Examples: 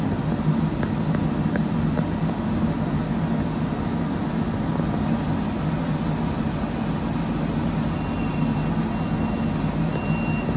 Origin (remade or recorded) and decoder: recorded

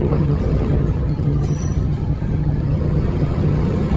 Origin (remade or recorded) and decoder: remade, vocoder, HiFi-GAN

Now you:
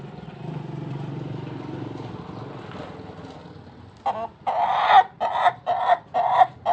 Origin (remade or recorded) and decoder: recorded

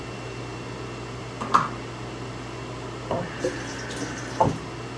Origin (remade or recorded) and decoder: recorded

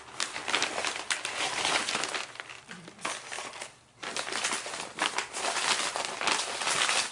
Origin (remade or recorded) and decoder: recorded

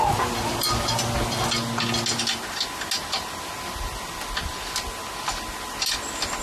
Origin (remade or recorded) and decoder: recorded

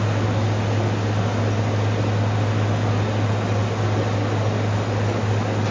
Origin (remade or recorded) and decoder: recorded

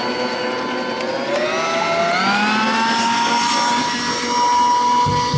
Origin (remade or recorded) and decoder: recorded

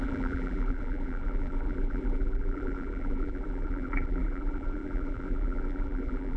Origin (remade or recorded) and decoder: remade, vocoder, BigVGAN v2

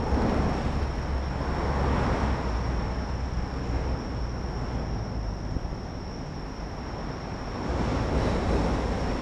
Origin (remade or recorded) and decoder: recorded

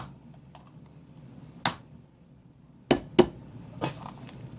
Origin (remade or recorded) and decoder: recorded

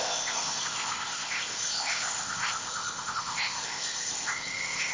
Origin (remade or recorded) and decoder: remade, codec, ZipCodec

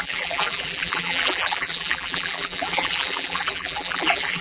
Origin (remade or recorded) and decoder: remade, vocoder, BigVGAN v2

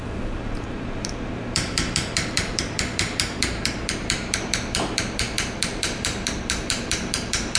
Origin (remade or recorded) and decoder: remade, vocoder, BigVGAN v2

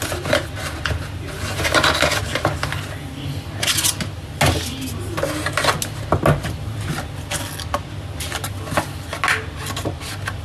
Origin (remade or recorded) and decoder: recorded